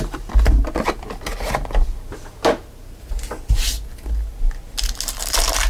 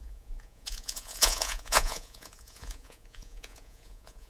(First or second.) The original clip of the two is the first